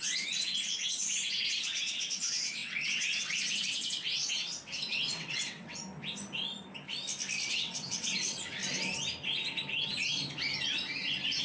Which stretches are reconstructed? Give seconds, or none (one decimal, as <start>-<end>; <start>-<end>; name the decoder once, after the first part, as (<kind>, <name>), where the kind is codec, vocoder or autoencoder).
0.0-5.8 (vocoder, WaveNeXt); 7.5-8.6